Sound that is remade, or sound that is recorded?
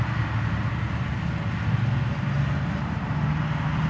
recorded